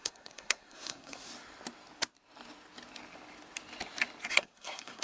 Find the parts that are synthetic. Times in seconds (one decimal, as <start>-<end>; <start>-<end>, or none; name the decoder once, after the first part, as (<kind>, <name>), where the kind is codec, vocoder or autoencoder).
0.0-1.3 (codec, SNAC); 4.3-5.0